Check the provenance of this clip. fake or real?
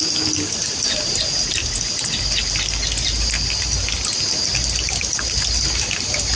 real